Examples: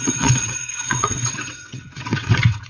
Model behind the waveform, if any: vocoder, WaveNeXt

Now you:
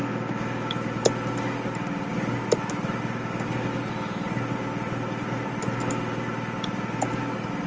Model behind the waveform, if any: none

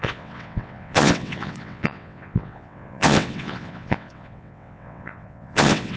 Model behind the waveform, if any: vocoder, WaveNeXt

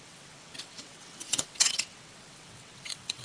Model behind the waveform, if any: vocoder, WaveNeXt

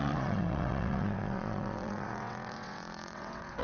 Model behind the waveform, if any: vocoder, WaveNeXt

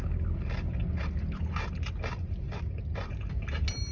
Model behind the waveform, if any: none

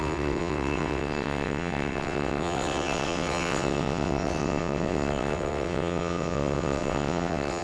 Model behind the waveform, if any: vocoder, WaveNeXt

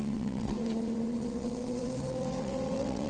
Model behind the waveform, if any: vocoder, WaveNeXt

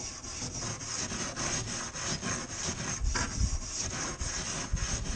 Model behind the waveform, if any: none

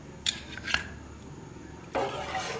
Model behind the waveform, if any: none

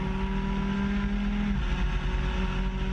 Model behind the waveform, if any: none